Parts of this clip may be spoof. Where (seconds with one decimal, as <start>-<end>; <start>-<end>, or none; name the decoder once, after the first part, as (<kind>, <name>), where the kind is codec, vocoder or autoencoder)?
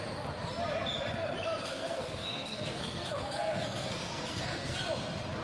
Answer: 1.6-4.8 (codec, SNAC)